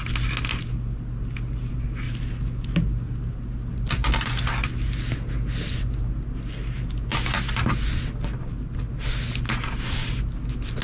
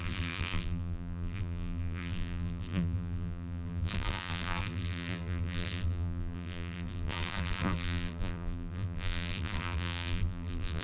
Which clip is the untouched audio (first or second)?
first